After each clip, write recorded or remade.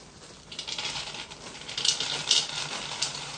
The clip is recorded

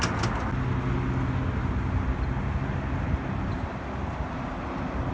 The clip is recorded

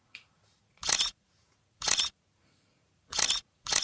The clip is remade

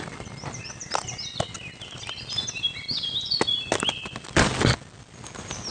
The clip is recorded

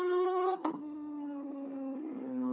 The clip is remade